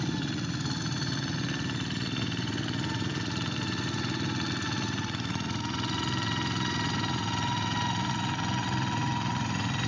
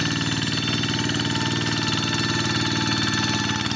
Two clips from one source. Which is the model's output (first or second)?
first